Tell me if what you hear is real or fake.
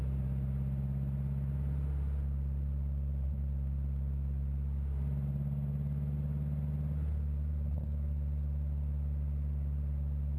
real